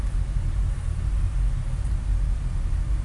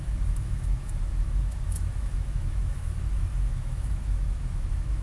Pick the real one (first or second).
first